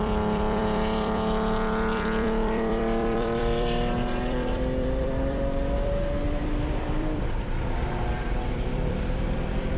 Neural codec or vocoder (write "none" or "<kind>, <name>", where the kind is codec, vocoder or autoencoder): vocoder, BigVGAN v2